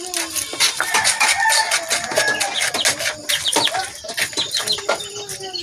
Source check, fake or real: real